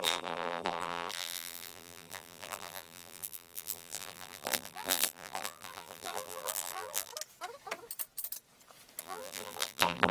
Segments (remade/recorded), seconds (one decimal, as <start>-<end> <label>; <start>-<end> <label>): 0.0-7.1 remade; 7.1-9.0 recorded; 9.0-10.1 remade